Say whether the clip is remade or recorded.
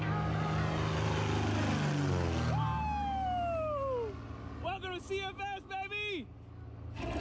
recorded